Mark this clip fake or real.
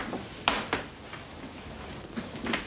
real